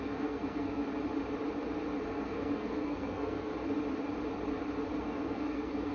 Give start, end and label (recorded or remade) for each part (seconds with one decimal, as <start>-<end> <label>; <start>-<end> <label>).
0.0-0.8 remade; 0.8-2.1 recorded; 2.1-3.5 remade; 3.5-5.0 recorded; 5.0-5.9 remade